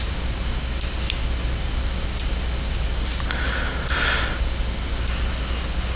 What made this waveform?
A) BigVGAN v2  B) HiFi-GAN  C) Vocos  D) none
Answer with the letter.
D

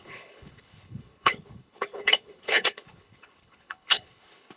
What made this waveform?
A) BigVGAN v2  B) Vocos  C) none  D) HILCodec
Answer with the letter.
D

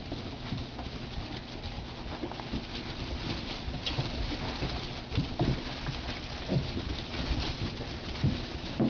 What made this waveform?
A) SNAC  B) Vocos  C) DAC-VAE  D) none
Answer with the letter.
D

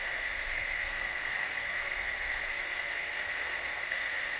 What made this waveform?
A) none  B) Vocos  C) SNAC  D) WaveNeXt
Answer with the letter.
C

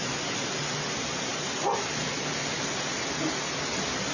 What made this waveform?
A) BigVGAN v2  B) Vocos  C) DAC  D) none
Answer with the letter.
D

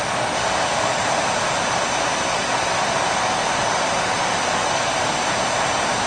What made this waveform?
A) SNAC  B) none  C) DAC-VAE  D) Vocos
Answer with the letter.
B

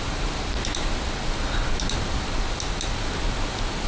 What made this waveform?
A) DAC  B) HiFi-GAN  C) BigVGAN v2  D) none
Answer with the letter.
D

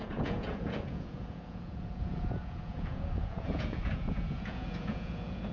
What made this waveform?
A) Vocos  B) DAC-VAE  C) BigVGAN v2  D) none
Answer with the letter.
A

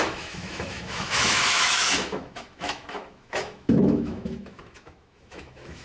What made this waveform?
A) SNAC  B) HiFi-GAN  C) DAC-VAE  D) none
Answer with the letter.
C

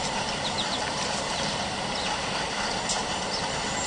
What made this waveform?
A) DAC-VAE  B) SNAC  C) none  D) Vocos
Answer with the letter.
C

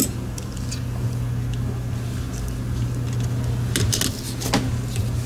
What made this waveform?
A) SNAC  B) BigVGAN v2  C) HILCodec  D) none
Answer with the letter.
D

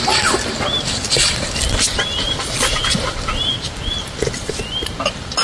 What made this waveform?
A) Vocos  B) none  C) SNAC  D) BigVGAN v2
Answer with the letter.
B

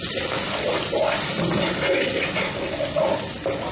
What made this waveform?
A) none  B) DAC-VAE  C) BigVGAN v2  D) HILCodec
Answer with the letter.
A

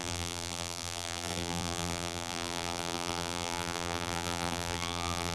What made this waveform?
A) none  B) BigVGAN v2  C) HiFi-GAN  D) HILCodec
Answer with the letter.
B